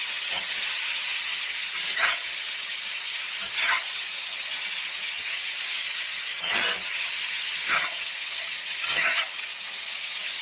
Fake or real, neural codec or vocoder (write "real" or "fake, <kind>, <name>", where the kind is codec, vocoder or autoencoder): fake, vocoder, HiFi-GAN